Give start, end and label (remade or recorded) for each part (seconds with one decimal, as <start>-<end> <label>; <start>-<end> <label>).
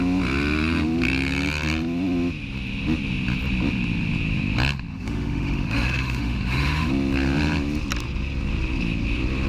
0.0-4.9 recorded; 4.9-6.9 remade; 6.9-9.5 recorded